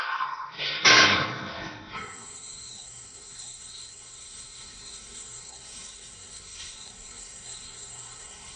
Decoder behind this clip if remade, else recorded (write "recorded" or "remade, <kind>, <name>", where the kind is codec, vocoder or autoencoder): remade, codec, SNAC